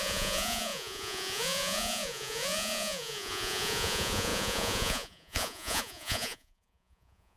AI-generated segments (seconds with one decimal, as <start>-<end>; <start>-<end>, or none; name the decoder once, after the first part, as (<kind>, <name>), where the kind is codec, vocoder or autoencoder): 0.0-7.4 (vocoder, Vocos)